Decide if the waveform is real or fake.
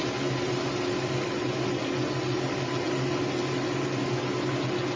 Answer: real